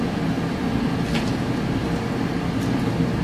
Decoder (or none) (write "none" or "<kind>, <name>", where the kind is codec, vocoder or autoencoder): none